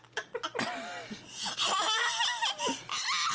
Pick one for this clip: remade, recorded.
recorded